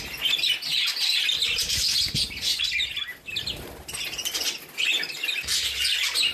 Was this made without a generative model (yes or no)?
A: yes